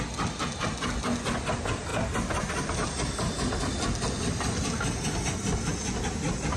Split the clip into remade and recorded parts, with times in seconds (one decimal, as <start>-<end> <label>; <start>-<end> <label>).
0.0-6.6 recorded